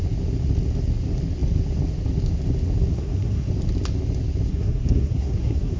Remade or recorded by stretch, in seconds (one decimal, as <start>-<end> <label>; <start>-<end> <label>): 0.0-2.9 recorded; 2.9-3.5 remade; 3.5-4.5 recorded; 4.5-5.8 remade